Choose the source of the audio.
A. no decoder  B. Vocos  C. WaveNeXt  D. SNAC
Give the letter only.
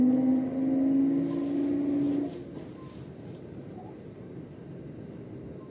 A